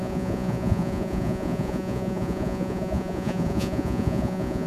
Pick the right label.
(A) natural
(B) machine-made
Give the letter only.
B